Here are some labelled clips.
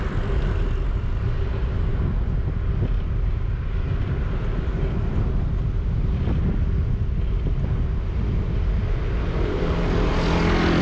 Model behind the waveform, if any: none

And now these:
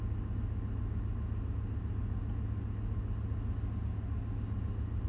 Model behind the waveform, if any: none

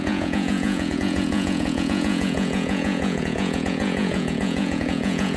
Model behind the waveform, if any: vocoder, Vocos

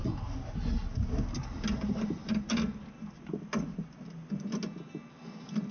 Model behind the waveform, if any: none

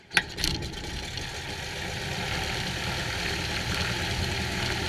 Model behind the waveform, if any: none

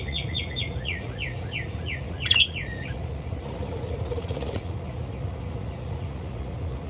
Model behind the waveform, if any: vocoder, Vocos